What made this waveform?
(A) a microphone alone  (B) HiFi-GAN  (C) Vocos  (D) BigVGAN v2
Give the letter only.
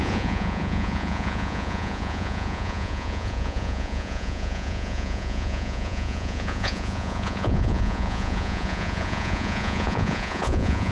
C